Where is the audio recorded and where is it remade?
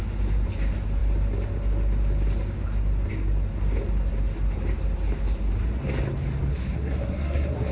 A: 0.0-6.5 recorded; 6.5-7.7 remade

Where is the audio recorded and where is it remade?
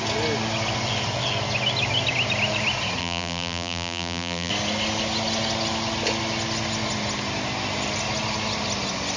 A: 0.0-3.0 recorded; 3.0-4.5 remade; 4.5-9.2 recorded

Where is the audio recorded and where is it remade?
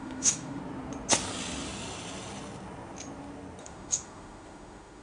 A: 0.0-0.6 remade; 0.6-3.6 recorded; 3.6-5.0 remade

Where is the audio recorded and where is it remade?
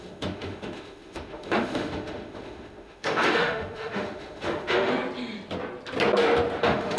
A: 0.0-4.9 remade; 4.9-6.6 recorded; 6.6-7.0 remade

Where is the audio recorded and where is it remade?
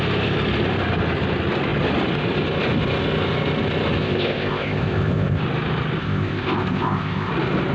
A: 0.0-4.0 recorded; 4.0-5.4 remade; 5.4-6.0 recorded; 6.0-7.3 remade; 7.3-7.7 recorded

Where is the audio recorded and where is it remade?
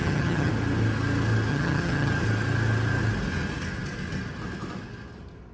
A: 0.0-0.5 remade; 0.5-1.5 recorded; 1.5-2.1 remade; 2.1-5.5 recorded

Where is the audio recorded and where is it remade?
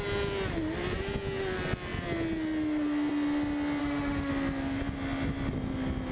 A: 0.0-3.8 recorded; 3.8-4.3 remade; 4.3-6.1 recorded